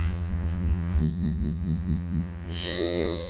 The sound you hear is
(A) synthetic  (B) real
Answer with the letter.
A